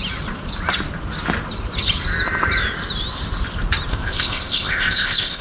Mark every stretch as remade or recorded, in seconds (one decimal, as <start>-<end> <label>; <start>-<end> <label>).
0.0-3.9 recorded; 3.9-5.4 remade